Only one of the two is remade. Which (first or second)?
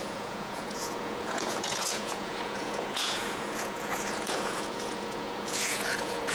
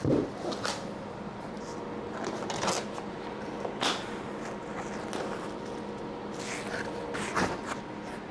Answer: first